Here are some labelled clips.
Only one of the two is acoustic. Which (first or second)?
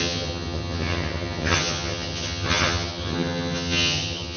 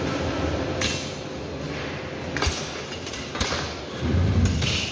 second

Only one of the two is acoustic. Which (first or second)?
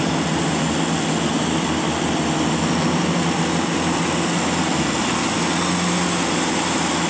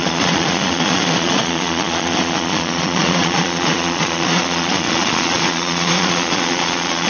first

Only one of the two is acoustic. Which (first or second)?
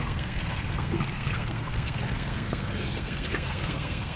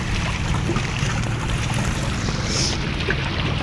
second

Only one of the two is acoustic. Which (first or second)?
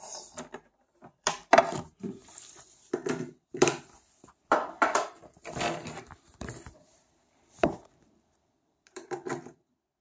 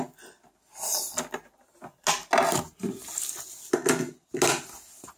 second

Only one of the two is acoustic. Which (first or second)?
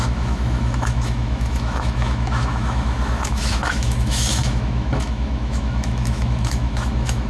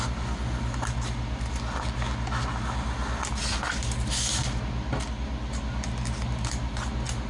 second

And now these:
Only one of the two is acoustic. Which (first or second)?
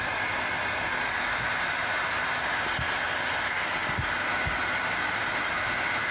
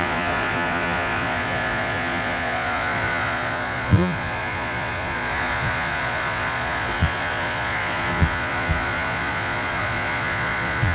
first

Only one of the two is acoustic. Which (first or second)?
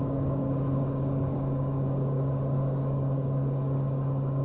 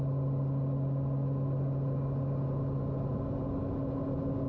second